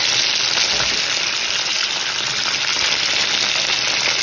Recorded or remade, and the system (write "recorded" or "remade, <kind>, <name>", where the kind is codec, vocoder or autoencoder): recorded